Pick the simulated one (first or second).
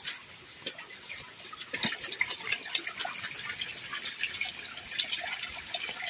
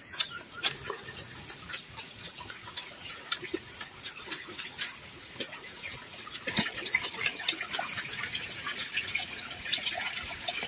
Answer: second